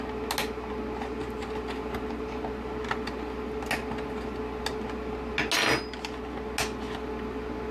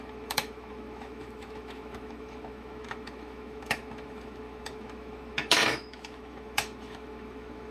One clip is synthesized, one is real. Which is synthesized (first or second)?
second